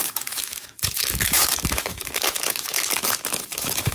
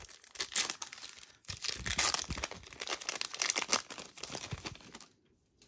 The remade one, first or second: first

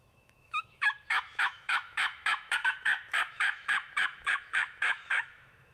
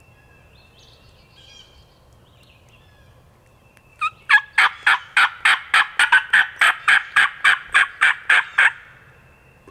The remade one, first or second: first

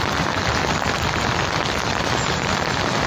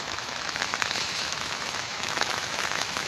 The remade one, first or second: second